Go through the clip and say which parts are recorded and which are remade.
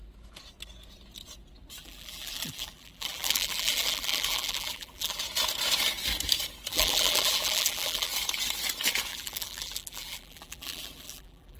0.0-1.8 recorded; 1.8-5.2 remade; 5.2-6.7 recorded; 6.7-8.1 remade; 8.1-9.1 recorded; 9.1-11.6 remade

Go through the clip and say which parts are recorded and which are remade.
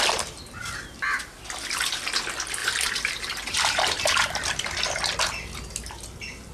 0.0-2.6 recorded; 2.6-4.0 remade; 4.0-6.5 recorded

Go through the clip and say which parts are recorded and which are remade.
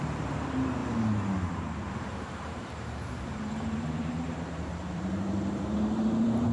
0.0-0.8 remade; 0.8-1.5 recorded; 1.5-6.5 remade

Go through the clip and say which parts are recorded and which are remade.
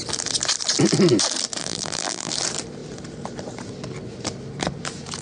0.0-1.6 recorded; 1.6-2.3 remade; 2.3-5.2 recorded